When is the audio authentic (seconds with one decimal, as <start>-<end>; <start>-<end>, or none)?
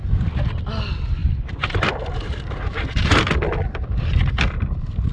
0.6-1.2; 1.9-5.1